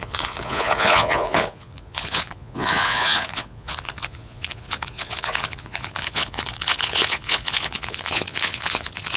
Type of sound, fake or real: fake